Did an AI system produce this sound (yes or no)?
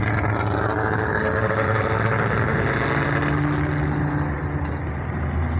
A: no